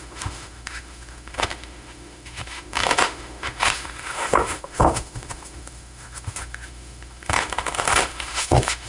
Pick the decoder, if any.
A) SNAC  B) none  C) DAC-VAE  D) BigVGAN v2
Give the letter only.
C